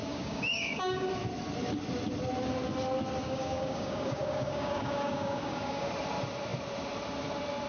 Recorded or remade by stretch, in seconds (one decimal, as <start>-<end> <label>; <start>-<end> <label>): 0.0-1.1 remade; 1.1-3.2 recorded; 3.2-5.9 remade; 5.9-7.7 recorded